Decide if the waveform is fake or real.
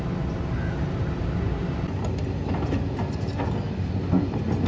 real